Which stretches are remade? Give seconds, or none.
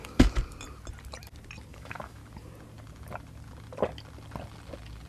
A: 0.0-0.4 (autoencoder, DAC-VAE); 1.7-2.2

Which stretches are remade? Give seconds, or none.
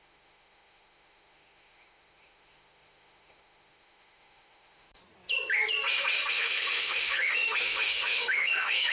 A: 0.0-5.0 (autoencoder, DAC-VAE); 6.3-8.9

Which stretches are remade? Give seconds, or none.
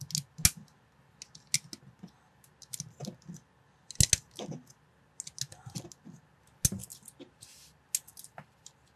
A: none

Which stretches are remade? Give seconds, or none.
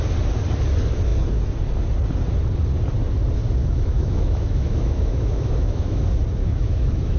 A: 3.6-6.0 (autoencoder, DAC-VAE); 6.4-7.2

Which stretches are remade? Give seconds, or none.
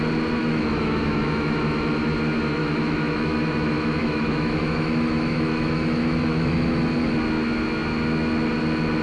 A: 0.4-1.9 (autoencoder, DAC-VAE); 2.6-6.8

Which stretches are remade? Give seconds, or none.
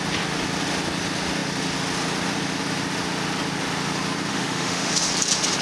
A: 4.3-4.9 (autoencoder, DAC-VAE)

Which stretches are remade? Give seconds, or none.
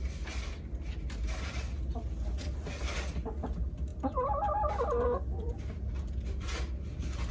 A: none